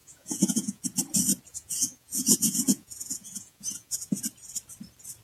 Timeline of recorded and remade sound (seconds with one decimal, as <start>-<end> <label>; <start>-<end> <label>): 0.0-0.8 remade; 0.8-1.5 recorded; 1.5-4.2 remade; 4.2-5.2 recorded